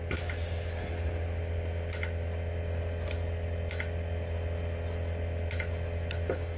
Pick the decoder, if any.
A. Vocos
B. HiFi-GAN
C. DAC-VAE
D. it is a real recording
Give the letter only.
D